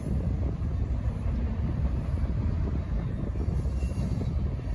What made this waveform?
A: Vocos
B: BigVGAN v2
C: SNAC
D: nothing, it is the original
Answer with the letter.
B